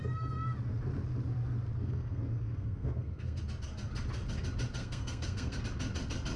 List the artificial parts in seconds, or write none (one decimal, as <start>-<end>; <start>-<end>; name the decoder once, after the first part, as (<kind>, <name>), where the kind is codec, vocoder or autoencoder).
1.8-3.4 (codec, SNAC); 4.8-5.6

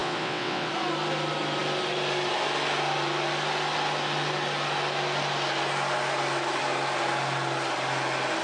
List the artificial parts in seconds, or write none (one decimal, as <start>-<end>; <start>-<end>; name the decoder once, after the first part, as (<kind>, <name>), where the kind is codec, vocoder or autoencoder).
0.0-0.7 (vocoder, WaveNeXt)

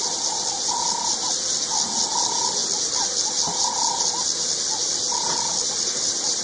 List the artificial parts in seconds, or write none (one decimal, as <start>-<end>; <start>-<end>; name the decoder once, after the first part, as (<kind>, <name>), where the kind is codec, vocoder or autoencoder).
none

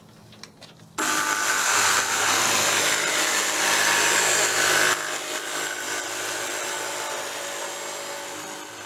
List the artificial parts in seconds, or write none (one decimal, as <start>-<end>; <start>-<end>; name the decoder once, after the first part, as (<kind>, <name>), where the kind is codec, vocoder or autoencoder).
1.6-2.4 (codec, SNAC)

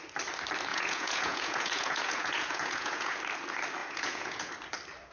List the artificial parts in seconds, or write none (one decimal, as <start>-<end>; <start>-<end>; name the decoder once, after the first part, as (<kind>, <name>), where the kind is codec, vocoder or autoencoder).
0.7-3.2 (vocoder, Vocos); 3.8-4.5

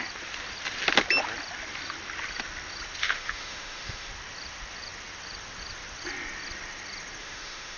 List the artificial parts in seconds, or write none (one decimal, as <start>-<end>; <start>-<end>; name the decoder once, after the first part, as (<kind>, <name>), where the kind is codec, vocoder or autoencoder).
3.0-4.1 (autoencoder, DAC-VAE); 7.2-7.8